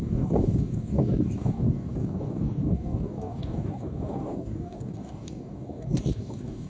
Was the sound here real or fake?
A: fake